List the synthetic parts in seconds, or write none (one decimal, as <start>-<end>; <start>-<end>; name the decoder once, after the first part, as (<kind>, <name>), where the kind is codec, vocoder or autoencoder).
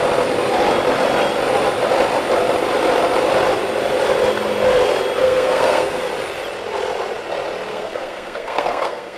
5.2-6.1 (codec, SNAC); 7.7-9.2